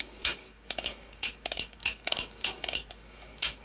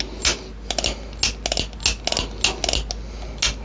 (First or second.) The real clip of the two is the second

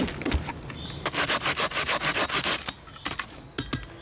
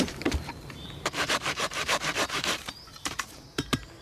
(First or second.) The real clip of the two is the first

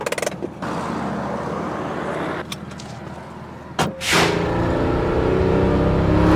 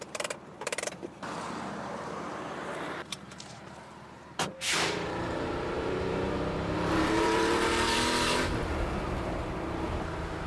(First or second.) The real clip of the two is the first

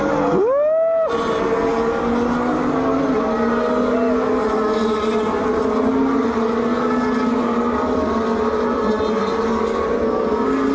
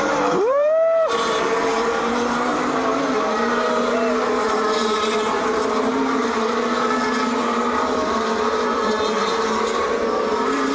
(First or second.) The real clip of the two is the first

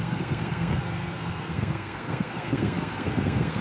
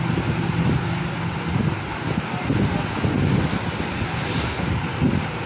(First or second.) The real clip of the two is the second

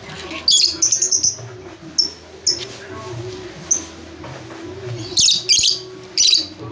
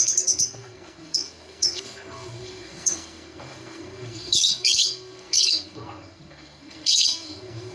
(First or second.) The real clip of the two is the first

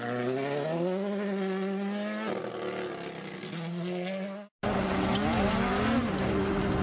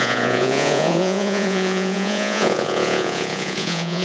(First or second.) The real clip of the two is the first